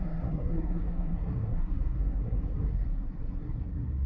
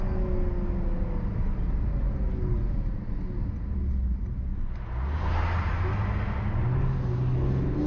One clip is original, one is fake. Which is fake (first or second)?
first